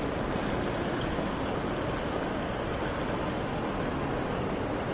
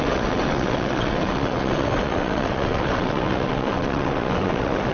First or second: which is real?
first